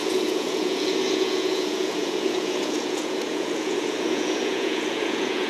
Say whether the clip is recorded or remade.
remade